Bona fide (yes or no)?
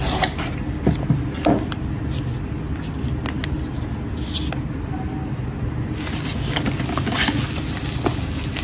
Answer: yes